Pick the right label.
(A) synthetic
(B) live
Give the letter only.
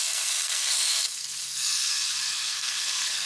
A